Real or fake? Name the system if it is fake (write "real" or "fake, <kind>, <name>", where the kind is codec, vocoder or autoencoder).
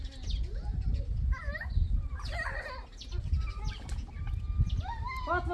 real